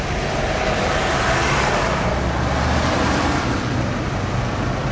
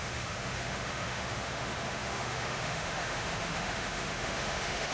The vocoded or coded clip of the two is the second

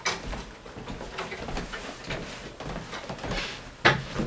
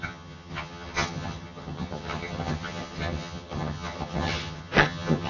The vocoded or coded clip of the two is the second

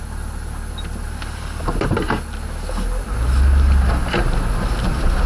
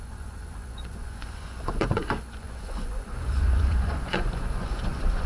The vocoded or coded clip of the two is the second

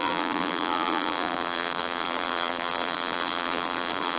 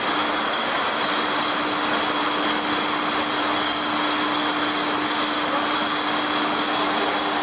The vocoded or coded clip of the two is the first